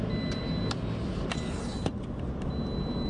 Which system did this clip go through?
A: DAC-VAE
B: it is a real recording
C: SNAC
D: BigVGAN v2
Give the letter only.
B